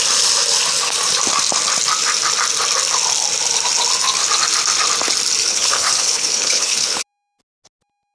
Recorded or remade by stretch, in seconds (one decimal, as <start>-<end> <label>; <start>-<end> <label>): 0.0-5.5 recorded; 5.5-7.0 remade; 7.0-8.1 recorded